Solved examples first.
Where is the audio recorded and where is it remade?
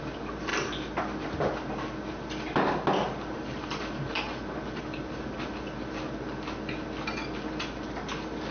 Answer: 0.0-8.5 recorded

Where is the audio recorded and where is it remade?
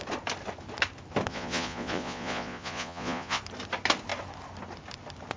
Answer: 0.0-1.3 recorded; 1.3-3.4 remade; 3.4-5.4 recorded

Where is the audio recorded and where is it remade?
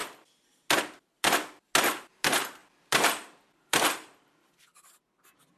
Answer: 0.0-2.6 recorded; 2.6-4.9 remade; 4.9-5.6 recorded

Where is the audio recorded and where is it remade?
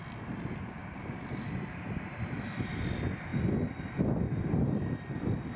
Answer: 0.0-5.6 recorded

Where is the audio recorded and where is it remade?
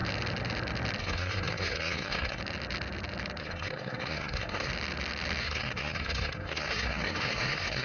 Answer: 0.0-1.0 recorded; 1.0-2.4 remade; 2.4-3.4 recorded; 3.4-4.7 remade; 4.7-5.4 recorded; 5.4-7.8 remade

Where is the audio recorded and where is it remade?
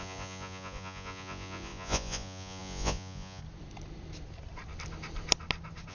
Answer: 0.0-3.4 remade; 3.4-5.9 recorded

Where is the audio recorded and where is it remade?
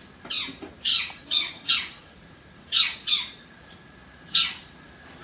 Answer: 0.0-0.9 recorded; 0.9-3.8 remade; 3.8-5.2 recorded